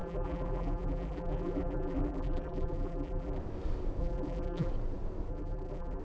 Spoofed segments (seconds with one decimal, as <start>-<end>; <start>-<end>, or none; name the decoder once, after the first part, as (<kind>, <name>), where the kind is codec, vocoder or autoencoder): 0.0-3.4 (vocoder, BigVGAN v2); 4.0-4.7; 5.3-6.0